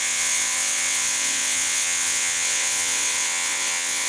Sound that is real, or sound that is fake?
fake